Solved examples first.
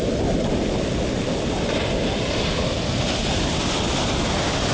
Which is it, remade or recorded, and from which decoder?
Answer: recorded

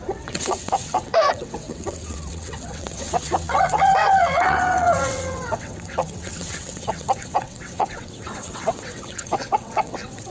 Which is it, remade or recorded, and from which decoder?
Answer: remade, vocoder, WaveNeXt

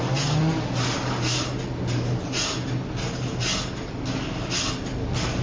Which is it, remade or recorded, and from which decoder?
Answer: recorded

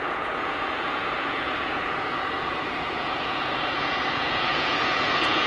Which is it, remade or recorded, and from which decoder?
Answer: remade, vocoder, Vocos